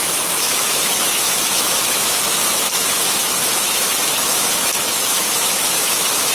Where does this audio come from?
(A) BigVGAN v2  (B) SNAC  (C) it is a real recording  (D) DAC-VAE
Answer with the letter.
D